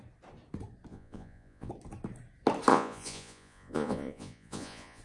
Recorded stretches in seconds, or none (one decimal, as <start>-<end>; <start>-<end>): 0.0-0.9; 1.7-2.7